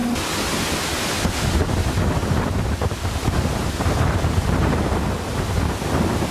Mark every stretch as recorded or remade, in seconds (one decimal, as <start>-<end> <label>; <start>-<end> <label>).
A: 0.0-2.2 recorded; 2.2-4.9 remade; 4.9-6.3 recorded